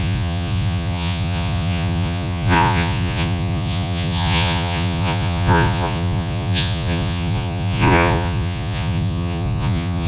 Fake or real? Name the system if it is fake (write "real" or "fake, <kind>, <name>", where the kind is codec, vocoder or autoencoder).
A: fake, vocoder, Vocos